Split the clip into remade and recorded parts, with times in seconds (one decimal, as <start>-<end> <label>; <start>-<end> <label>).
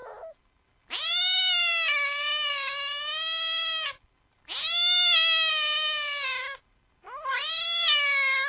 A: 0.0-4.6 recorded; 4.6-5.5 remade; 5.5-8.5 recorded